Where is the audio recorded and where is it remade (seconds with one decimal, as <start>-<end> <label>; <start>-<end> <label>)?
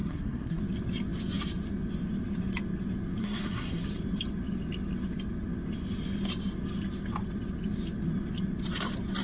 0.0-0.6 remade; 0.6-3.2 recorded; 3.2-3.8 remade; 3.8-9.2 recorded